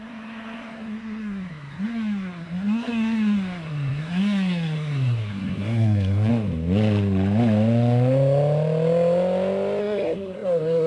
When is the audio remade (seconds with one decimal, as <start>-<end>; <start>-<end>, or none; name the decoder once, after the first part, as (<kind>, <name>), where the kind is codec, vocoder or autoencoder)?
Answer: 0.0-6.3 (codec, SNAC); 9.8-10.9